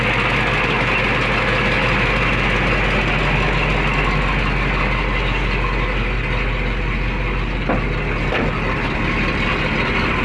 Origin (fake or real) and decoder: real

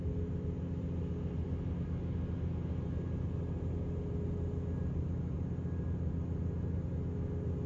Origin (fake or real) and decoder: real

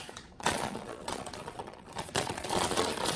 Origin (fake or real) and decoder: fake, vocoder, Vocos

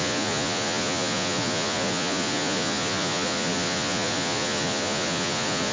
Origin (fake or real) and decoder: fake, vocoder, Vocos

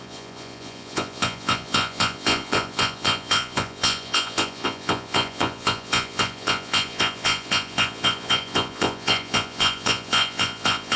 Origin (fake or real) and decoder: fake, vocoder, Vocos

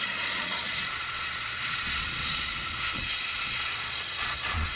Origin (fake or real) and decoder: fake, vocoder, Vocos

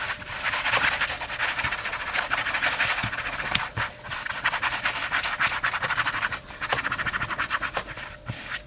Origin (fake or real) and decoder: real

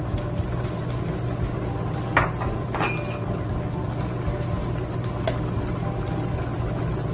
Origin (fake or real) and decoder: real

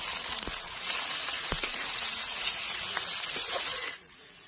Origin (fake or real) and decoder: fake, vocoder, Vocos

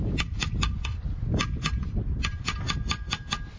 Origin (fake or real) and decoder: real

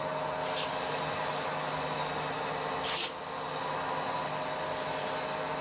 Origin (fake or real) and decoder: real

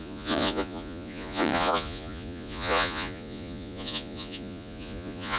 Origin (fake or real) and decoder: fake, vocoder, Vocos